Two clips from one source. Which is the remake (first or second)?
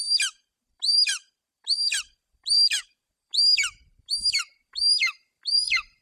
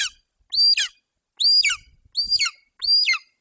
first